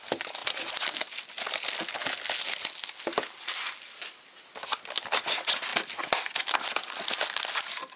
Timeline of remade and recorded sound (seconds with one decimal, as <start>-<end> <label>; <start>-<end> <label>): 0.0-8.0 recorded